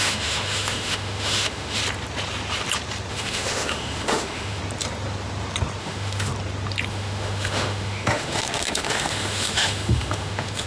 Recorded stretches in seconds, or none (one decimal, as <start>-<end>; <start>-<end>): 1.8-3.1; 4.6-5.8; 6.3-6.9